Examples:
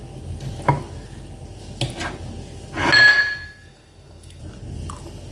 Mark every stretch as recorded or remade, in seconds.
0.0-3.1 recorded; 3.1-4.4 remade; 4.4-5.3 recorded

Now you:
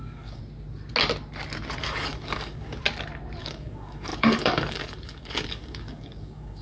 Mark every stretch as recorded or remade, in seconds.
0.0-0.4 remade; 0.4-1.8 recorded; 1.8-2.8 remade; 2.8-3.4 recorded; 3.4-6.6 remade

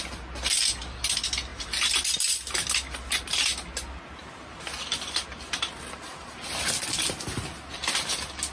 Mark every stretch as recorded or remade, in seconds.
0.0-8.5 recorded

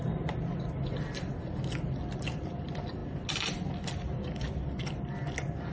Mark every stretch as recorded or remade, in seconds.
0.0-5.7 recorded

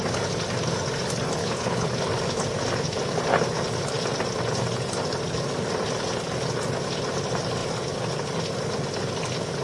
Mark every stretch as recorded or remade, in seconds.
0.0-1.4 recorded; 1.4-1.9 remade; 1.9-9.6 recorded

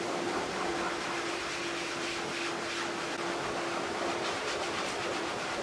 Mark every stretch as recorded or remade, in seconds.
0.0-0.7 remade; 0.7-4.1 recorded; 4.1-5.6 remade

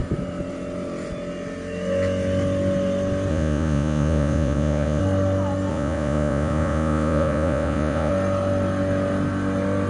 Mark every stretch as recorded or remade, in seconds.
0.0-3.3 recorded; 3.3-5.0 remade; 5.0-5.7 recorded; 5.7-8.1 remade; 8.1-9.9 recorded